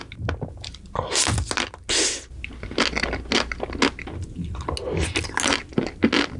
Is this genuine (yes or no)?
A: yes